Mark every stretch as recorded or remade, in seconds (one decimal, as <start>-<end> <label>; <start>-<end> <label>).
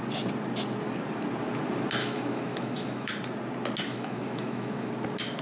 0.0-2.0 recorded; 2.0-3.1 remade; 3.1-3.9 recorded; 3.9-4.9 remade; 4.9-5.4 recorded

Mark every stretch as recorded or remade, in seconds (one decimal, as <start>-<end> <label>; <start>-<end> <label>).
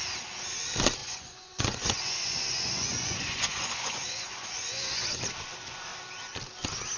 0.0-1.0 recorded; 1.0-5.2 remade; 5.2-7.0 recorded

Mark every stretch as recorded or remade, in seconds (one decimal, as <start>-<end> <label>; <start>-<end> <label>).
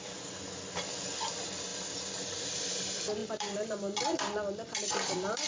0.0-1.7 recorded; 1.7-2.4 remade; 2.4-3.2 recorded; 3.2-5.5 remade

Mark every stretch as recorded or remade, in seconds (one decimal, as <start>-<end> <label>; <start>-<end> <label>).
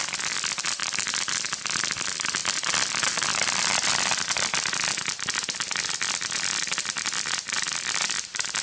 0.0-0.8 recorded; 0.8-1.3 remade; 1.3-8.6 recorded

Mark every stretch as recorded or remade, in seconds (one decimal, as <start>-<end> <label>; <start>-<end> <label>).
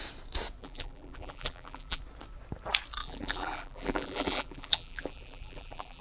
0.0-0.6 recorded; 0.6-2.0 remade; 2.0-3.0 recorded; 3.0-6.0 remade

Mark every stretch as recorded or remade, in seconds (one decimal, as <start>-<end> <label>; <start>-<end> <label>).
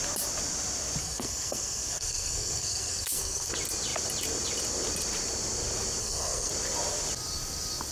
0.0-1.0 recorded; 1.0-3.5 remade; 3.5-6.0 recorded; 6.0-6.5 remade; 6.5-7.9 recorded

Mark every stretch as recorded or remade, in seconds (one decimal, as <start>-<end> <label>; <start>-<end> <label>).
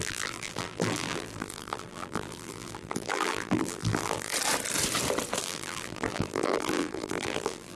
0.0-4.3 remade; 4.3-5.4 recorded; 5.4-7.8 remade